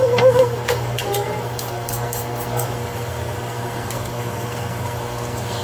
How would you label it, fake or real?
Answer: fake